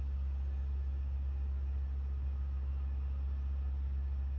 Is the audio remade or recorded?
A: recorded